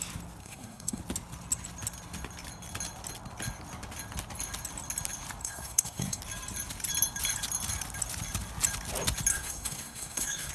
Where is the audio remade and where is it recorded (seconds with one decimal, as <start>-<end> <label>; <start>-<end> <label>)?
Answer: 0.0-0.4 recorded; 0.4-1.0 remade; 1.0-5.4 recorded; 5.4-6.2 remade; 6.2-9.3 recorded; 9.3-10.5 remade